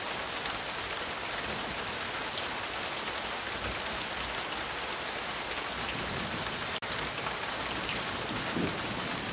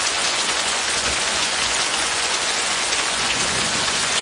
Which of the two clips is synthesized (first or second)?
second